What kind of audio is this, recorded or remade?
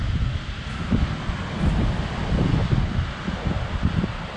recorded